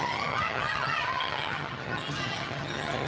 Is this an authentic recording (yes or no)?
no